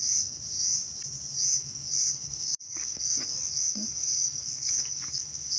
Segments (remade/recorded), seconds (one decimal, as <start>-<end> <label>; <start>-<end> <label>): 0.0-0.4 remade; 0.4-1.6 recorded; 1.6-5.6 remade